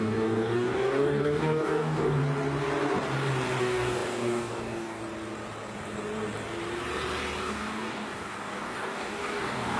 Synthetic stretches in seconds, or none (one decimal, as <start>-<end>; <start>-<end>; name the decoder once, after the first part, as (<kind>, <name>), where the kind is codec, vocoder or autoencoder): 0.0-2.2 (codec, DAC); 3.6-5.0; 7.4-9.8

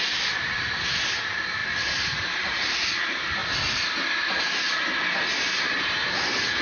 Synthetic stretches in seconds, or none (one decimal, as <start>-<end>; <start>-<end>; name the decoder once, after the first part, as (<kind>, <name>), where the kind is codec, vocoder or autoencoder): 0.0-3.4 (vocoder, BigVGAN v2); 4.3-6.6

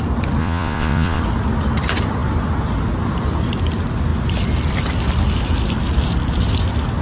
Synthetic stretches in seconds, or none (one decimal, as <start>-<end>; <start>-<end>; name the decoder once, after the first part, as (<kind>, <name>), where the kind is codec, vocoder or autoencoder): 0.4-1.2 (vocoder, Vocos)

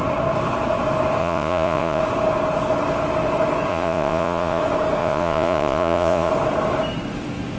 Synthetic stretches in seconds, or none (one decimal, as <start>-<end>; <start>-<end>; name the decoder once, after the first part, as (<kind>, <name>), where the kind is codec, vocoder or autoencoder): 1.2-2.0 (vocoder, Vocos); 3.7-4.6; 5.0-6.3

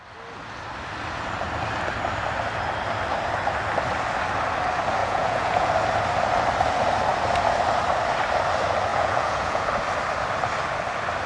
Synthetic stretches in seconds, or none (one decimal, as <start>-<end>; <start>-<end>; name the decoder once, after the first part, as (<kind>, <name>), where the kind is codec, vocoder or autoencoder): 5.0-5.7 (vocoder, Vocos); 8.9-9.7

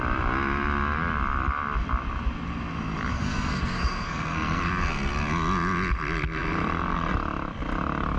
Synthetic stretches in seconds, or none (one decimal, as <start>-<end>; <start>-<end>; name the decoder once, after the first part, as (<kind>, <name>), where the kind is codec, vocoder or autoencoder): 3.1-4.7 (codec, SNAC)